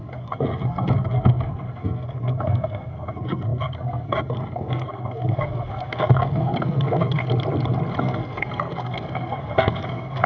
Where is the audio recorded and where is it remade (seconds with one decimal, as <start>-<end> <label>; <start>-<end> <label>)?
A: 0.0-7.2 remade; 7.2-8.0 recorded; 8.0-10.3 remade